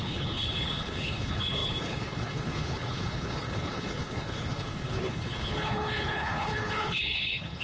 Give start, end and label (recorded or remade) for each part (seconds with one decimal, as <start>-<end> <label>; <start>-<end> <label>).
0.0-7.6 remade